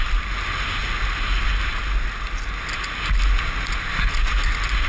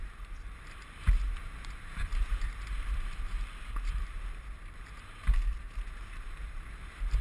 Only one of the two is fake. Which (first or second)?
second